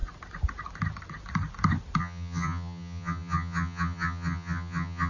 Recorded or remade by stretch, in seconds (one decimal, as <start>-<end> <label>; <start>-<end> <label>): 0.0-2.0 recorded; 2.0-5.1 remade